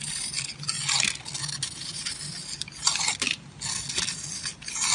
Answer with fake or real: real